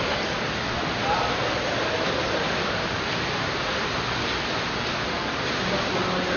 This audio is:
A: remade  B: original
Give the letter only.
B